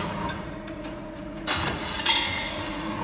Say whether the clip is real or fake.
fake